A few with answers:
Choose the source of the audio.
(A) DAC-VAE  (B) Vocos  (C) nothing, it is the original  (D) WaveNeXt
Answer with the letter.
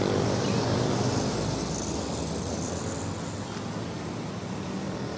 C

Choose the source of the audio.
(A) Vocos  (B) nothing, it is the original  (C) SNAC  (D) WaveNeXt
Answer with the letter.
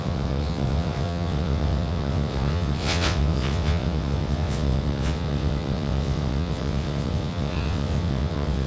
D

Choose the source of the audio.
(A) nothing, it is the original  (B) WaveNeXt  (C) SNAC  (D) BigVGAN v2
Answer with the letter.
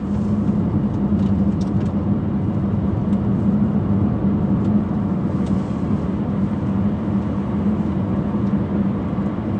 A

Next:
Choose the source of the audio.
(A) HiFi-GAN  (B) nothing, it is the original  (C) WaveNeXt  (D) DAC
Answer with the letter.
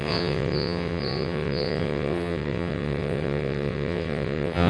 C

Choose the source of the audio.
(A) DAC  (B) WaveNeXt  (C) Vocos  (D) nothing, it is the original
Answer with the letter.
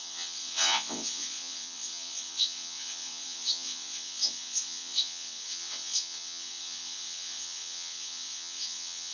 B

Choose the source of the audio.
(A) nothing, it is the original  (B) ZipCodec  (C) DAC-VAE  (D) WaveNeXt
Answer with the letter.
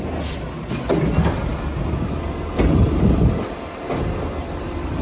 A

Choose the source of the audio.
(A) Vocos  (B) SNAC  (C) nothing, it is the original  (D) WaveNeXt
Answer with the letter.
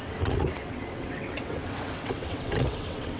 D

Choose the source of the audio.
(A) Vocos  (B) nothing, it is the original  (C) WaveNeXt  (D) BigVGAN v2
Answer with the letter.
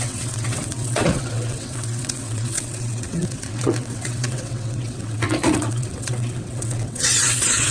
C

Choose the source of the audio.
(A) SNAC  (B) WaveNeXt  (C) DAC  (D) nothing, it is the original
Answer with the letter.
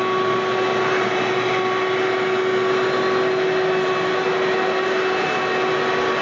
D